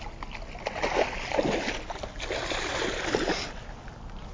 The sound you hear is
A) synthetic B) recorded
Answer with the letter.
B